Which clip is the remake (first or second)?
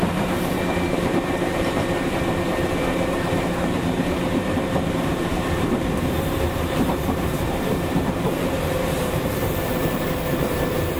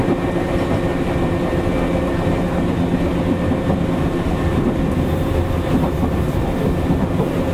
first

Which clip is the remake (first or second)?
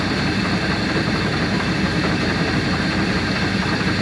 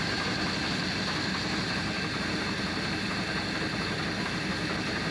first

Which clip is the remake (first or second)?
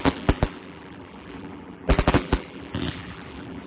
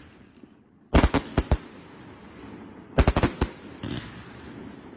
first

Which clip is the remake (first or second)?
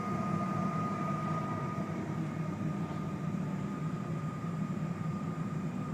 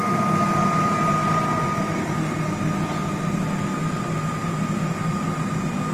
first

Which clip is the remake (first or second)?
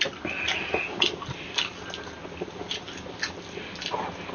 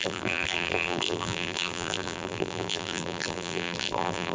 second